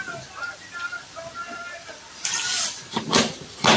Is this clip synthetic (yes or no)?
yes